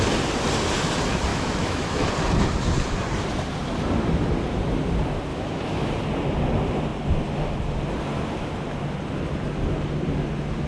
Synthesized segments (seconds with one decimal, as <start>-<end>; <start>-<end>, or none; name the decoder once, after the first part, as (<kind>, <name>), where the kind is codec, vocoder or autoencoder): 1.3-2.1 (autoencoder, DAC-VAE); 5.3-5.9